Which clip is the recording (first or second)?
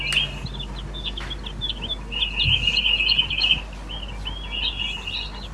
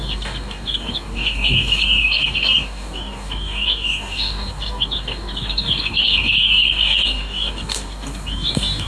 first